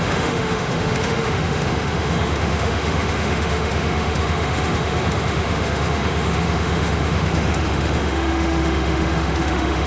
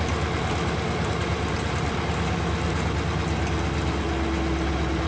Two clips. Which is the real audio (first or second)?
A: second